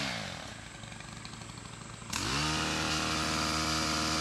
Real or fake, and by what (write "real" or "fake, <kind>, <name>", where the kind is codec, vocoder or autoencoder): real